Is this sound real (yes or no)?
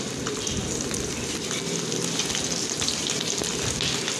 yes